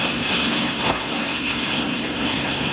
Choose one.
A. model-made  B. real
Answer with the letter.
A